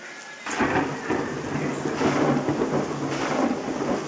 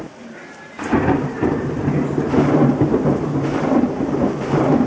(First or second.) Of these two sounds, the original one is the first